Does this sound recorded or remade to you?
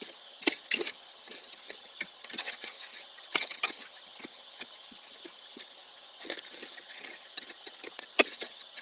remade